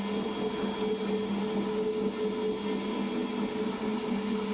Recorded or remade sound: recorded